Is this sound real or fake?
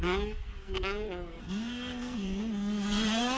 fake